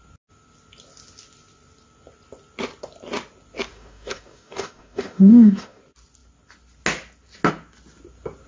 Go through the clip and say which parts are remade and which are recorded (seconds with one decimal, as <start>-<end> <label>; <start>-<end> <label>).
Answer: 0.0-3.7 recorded; 3.7-5.8 remade; 5.8-8.5 recorded